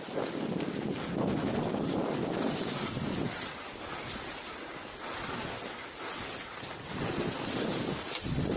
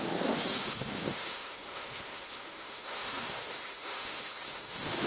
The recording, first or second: first